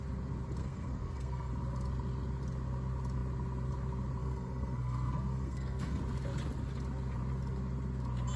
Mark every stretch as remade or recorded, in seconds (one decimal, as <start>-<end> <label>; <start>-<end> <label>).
0.0-0.6 recorded; 0.6-1.5 remade; 1.5-4.2 recorded; 4.2-6.0 remade; 6.0-8.4 recorded